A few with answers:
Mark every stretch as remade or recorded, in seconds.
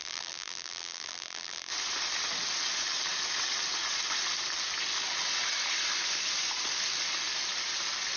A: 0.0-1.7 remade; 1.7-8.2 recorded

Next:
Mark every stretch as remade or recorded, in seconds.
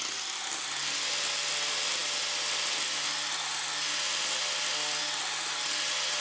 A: 0.0-6.2 recorded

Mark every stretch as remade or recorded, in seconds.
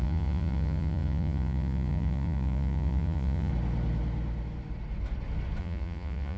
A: 0.0-3.5 remade; 3.5-5.6 recorded; 5.6-6.4 remade